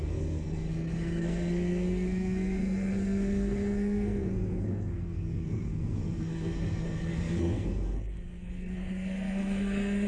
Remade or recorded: remade